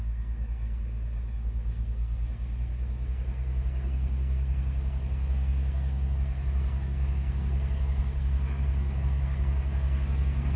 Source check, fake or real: fake